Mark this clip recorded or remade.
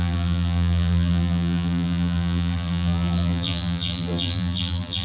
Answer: remade